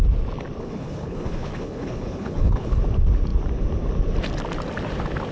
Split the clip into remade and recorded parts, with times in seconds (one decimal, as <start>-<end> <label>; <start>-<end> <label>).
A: 0.0-0.6 recorded; 0.6-2.8 remade; 2.8-5.3 recorded